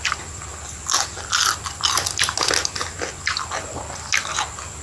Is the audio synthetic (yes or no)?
no